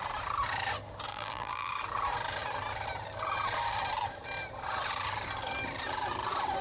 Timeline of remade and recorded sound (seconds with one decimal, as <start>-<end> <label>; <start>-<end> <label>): 0.0-1.1 recorded; 1.1-1.7 remade; 1.7-6.6 recorded

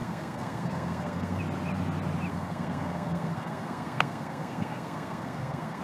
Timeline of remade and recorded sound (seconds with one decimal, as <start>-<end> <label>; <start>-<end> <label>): 0.0-1.4 remade; 1.4-2.3 recorded; 2.3-5.8 remade

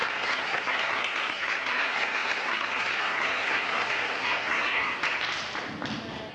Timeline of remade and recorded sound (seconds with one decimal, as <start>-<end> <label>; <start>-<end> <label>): 0.0-5.0 remade; 5.0-6.3 recorded

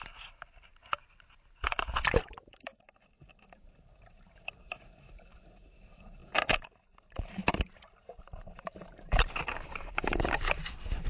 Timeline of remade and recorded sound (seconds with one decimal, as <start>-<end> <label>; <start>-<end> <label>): 0.0-6.2 remade; 6.2-7.0 recorded; 7.0-11.1 remade

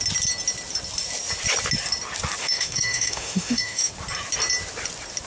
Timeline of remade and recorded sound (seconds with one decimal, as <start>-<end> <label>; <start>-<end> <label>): 0.0-2.4 recorded; 2.4-3.9 remade; 3.9-5.3 recorded